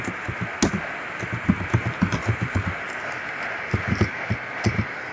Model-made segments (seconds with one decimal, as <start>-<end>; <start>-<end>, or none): 2.2-3.2